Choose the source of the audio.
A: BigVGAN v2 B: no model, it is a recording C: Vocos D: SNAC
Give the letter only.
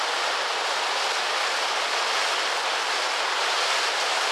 B